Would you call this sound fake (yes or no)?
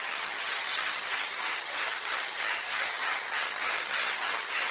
yes